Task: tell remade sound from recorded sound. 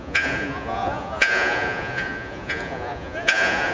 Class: remade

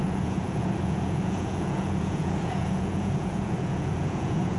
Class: remade